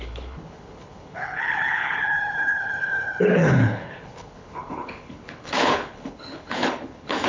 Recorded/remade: remade